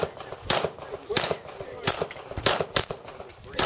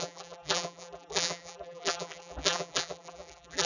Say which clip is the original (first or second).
first